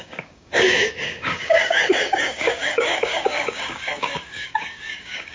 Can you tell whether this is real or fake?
fake